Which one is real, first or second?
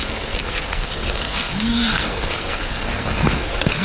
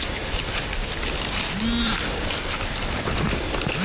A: second